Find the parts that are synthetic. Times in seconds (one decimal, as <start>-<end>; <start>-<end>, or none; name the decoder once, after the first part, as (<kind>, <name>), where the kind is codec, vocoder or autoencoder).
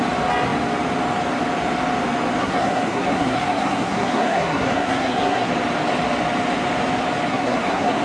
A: 2.4-5.5 (codec, SNAC); 7.3-8.0